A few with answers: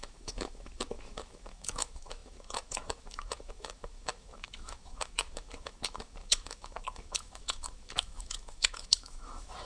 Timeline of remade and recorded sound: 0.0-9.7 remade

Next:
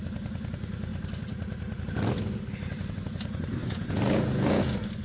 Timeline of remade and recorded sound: 0.0-3.6 recorded; 3.6-4.6 remade; 4.6-5.0 recorded

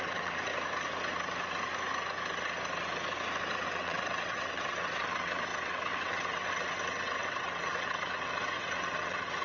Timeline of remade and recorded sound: 0.0-0.5 remade; 0.5-3.7 recorded; 3.7-9.4 remade